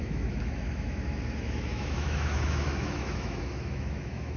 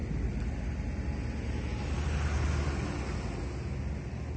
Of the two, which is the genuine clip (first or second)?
second